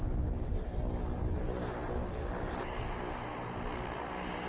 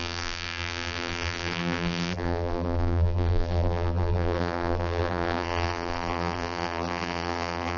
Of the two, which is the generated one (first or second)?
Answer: second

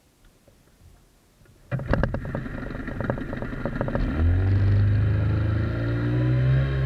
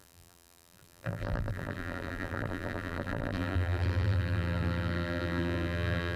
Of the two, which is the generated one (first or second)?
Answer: second